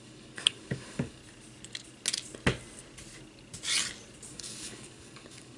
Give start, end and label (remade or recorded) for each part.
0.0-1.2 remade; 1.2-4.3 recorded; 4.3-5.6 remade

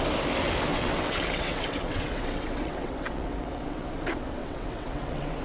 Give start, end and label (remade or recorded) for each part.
0.0-0.7 recorded; 0.7-3.9 remade; 3.9-4.4 recorded; 4.4-5.4 remade

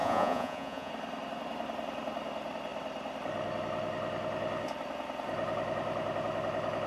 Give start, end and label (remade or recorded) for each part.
0.0-0.9 remade; 0.9-6.9 recorded

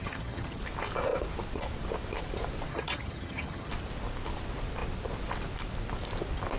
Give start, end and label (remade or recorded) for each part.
0.0-0.6 remade; 0.6-2.7 recorded; 2.7-3.7 remade; 3.7-6.6 recorded

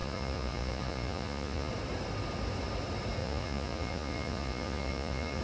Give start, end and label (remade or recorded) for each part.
0.0-1.7 remade; 1.7-3.2 recorded; 3.2-5.4 remade

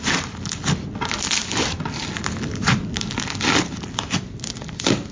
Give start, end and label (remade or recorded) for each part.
0.0-5.1 recorded